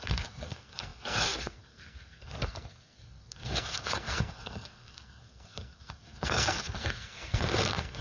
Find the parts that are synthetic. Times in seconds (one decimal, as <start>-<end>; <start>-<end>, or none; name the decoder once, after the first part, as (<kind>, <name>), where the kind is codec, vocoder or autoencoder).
0.0-8.0 (codec, SNAC)